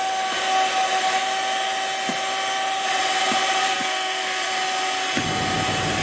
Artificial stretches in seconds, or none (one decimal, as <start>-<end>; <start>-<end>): 3.6-4.5